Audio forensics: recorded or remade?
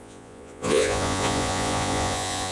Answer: remade